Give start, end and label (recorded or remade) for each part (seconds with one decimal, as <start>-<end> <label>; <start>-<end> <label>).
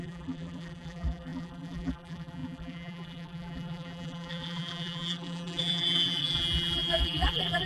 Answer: 0.0-7.7 remade